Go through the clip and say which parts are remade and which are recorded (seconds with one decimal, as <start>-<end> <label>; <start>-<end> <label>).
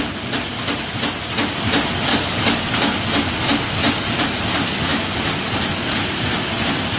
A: 0.0-2.1 recorded; 2.1-3.0 remade; 3.0-7.0 recorded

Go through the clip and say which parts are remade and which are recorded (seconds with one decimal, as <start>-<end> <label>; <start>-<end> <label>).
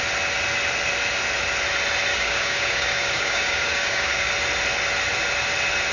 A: 0.0-2.1 recorded; 2.1-4.3 remade; 4.3-5.9 recorded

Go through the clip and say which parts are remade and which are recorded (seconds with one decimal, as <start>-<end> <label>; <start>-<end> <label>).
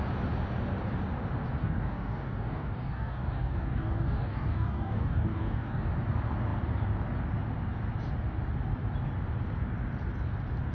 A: 0.0-1.6 recorded; 1.6-5.9 remade; 5.9-10.7 recorded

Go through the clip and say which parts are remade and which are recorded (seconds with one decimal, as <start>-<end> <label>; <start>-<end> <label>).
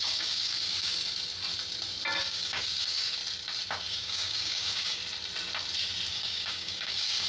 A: 0.0-0.9 remade; 0.9-2.2 recorded; 2.2-3.2 remade; 3.2-3.9 recorded; 3.9-5.0 remade; 5.0-6.1 recorded; 6.1-7.3 remade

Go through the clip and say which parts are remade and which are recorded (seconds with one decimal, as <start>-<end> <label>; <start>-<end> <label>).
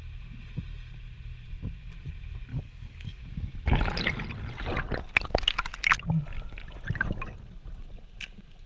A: 0.0-2.5 recorded; 2.5-3.2 remade; 3.2-8.7 recorded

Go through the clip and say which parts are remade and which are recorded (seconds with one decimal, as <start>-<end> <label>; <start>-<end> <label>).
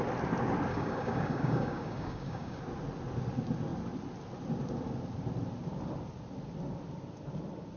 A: 0.0-0.7 recorded; 0.7-2.6 remade; 2.6-7.8 recorded